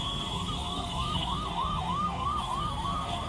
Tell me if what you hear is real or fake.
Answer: fake